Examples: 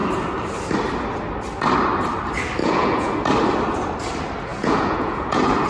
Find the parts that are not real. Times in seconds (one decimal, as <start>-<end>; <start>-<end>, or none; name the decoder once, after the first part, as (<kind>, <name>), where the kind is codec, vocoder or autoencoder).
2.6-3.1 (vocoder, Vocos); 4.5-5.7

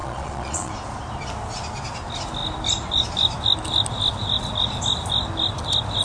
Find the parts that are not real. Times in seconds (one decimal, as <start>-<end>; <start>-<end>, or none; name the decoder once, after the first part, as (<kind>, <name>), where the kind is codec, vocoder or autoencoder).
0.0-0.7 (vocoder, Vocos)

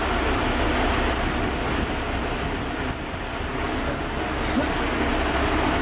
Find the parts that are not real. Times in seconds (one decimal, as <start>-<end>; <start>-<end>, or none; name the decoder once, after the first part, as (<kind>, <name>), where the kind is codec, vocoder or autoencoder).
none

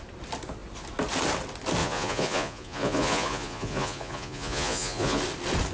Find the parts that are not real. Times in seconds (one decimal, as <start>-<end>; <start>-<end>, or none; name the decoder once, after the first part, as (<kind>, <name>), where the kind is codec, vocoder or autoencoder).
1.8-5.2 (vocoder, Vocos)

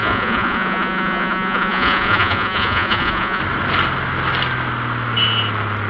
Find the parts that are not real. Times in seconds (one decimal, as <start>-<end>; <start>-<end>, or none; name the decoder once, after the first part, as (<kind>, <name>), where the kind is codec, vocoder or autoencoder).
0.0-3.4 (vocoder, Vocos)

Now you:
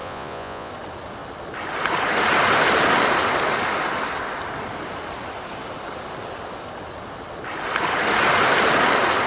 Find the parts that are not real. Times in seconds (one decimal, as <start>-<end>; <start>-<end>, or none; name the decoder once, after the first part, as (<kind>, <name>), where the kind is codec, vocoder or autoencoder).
0.0-0.7 (vocoder, Vocos)

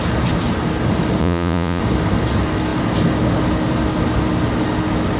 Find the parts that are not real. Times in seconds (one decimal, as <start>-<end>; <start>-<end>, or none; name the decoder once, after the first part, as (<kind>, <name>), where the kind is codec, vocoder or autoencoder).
1.2-1.8 (vocoder, Vocos)